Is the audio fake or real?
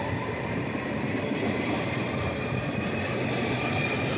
fake